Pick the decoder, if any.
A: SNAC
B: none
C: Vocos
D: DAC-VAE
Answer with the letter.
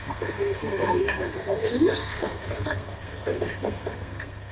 A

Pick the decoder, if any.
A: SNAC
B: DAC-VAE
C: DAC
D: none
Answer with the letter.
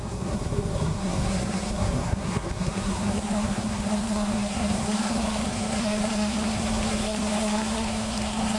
A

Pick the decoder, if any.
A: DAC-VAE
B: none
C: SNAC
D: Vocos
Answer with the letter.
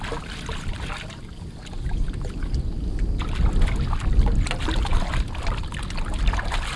B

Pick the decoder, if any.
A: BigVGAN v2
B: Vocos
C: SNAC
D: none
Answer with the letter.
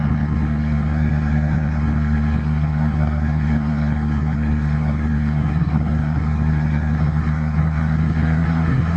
C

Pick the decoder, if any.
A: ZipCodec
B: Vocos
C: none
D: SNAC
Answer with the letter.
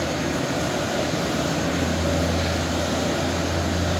C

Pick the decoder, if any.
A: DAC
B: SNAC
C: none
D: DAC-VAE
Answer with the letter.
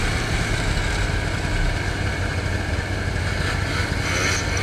C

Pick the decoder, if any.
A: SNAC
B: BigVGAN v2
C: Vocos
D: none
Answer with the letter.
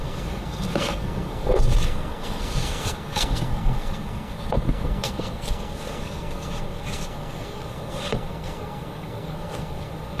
A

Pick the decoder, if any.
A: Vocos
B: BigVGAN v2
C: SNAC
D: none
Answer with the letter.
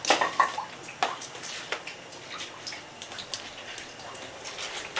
D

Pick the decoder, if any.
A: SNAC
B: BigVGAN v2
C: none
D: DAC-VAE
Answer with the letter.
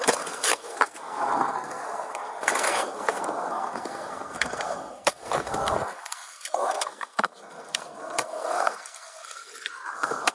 A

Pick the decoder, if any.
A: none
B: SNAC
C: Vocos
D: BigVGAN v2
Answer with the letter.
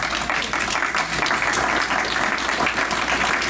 A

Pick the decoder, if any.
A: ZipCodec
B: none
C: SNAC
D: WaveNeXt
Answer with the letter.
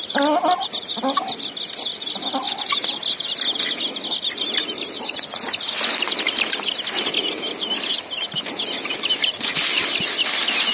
B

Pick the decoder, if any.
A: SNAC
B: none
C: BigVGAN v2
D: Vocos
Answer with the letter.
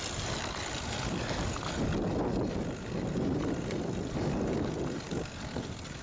B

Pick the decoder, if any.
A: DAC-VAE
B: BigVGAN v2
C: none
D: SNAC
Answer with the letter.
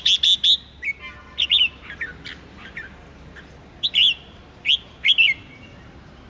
C